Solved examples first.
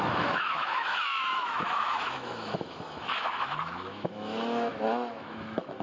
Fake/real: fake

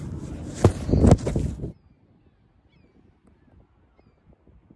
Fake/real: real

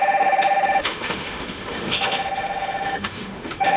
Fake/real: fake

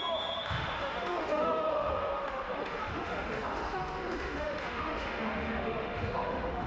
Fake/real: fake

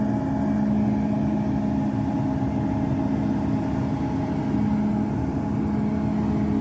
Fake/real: real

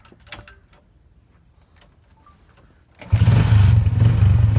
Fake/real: real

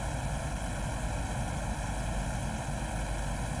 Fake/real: real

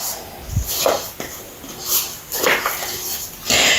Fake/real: real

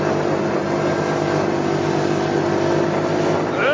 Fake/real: real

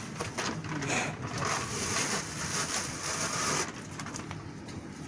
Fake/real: real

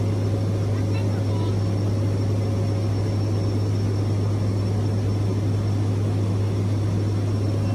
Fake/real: real